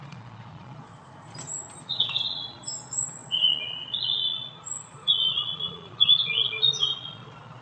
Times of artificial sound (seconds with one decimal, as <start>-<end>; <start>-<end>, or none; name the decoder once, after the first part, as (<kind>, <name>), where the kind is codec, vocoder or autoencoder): 0.0-0.9 (vocoder, Vocos); 1.8-7.6